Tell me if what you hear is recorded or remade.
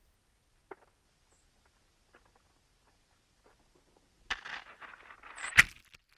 recorded